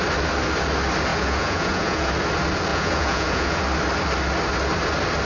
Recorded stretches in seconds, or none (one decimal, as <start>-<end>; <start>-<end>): 0.0-1.1; 2.1-2.7; 3.6-5.2

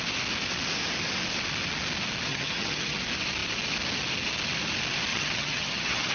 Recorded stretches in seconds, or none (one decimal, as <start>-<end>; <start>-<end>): 0.0-2.3; 3.0-5.1

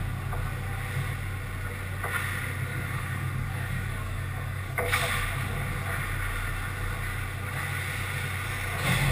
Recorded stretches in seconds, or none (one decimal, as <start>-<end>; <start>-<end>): 0.0-2.7; 5.0-9.1

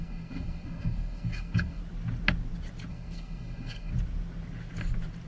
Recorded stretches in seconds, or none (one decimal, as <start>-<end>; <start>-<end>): 1.8-2.9; 3.9-5.3

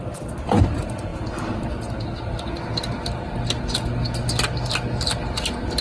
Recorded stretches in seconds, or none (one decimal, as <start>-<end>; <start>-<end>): 0.0-5.8

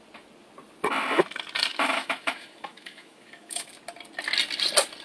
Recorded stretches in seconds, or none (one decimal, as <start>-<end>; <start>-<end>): 0.0-1.7; 3.7-5.0